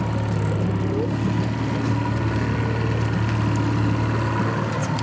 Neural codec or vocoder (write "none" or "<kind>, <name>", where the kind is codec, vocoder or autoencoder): none